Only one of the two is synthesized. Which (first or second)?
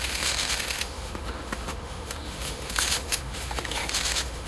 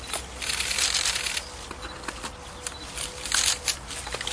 first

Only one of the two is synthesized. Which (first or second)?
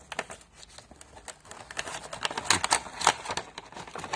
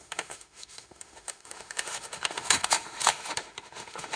second